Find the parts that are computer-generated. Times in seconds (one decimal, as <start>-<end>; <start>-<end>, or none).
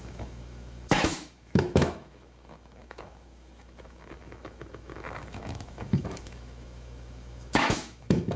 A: 0.0-8.4